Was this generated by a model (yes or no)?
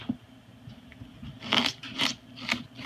no